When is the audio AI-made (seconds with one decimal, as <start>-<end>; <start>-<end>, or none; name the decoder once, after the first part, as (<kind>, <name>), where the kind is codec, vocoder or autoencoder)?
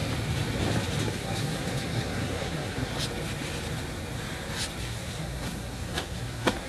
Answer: 1.0-2.9 (codec, SNAC); 4.8-6.7